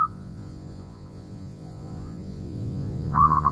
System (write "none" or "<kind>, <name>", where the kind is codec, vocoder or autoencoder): vocoder, Vocos